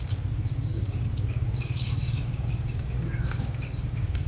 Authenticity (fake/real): fake